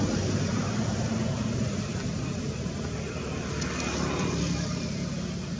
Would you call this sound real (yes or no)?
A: yes